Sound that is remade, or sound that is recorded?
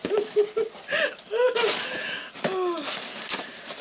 recorded